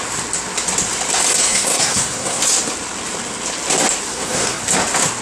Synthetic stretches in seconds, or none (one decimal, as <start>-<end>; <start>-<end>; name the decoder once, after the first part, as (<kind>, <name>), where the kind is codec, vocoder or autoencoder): 1.4-2.4 (codec, SNAC); 4.1-4.6